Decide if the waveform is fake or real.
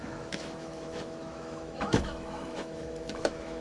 fake